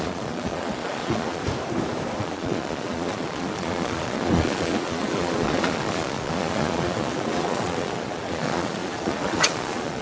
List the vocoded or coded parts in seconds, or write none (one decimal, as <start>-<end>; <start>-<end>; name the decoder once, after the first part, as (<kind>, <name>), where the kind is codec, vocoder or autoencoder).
0.0-1.4 (vocoder, Vocos); 2.2-10.0